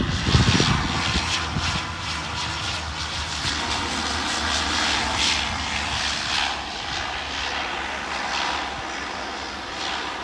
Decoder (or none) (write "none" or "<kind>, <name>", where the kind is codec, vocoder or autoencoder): none